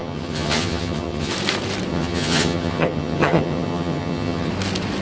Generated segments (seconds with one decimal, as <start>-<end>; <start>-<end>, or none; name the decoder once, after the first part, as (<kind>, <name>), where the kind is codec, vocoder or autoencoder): 0.0-1.3 (vocoder, HiFi-GAN); 1.9-4.5

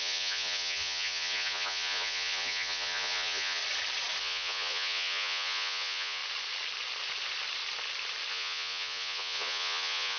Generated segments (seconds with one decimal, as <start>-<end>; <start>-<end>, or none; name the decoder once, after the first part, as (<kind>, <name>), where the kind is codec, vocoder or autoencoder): 0.0-3.6 (vocoder, Vocos); 4.2-6.2; 8.3-10.2

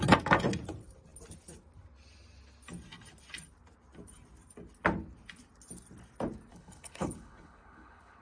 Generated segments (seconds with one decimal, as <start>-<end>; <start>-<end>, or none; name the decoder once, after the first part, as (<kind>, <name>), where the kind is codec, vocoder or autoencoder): 6.5-8.2 (codec, HILCodec)

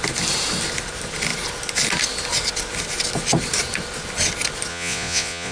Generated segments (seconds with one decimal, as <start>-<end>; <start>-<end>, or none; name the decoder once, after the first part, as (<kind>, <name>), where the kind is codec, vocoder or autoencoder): 4.7-5.5 (vocoder, Vocos)

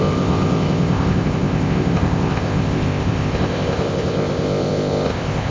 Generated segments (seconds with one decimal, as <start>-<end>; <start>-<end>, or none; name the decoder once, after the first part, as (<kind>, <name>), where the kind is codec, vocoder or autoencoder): 0.0-5.5 (codec, ZipCodec)

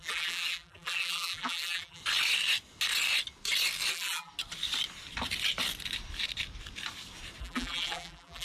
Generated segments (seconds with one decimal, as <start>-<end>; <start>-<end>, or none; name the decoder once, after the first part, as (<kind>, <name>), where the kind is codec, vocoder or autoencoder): 0.0-2.0 (vocoder, BigVGAN v2); 3.9-4.3; 7.4-8.4

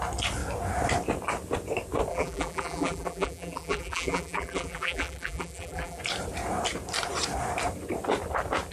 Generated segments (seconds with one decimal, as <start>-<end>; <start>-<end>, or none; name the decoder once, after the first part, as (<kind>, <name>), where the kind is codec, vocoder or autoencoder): 2.1-6.0 (vocoder, BigVGAN v2)

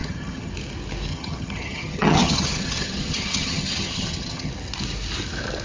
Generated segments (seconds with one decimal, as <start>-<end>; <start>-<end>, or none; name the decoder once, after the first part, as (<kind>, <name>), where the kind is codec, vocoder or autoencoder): 0.0-0.5 (vocoder, HiFi-GAN); 1.1-4.5